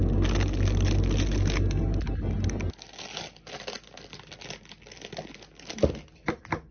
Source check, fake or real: real